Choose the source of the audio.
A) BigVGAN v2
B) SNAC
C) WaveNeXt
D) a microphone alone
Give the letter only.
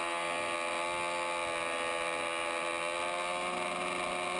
D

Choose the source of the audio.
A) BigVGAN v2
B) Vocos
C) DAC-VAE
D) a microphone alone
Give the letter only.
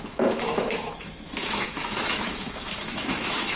C